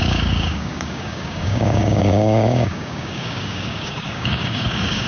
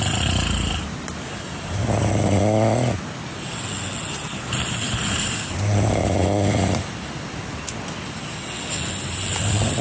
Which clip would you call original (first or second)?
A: second